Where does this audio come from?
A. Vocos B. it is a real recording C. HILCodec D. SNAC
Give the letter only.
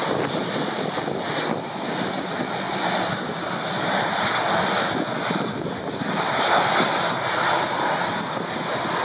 B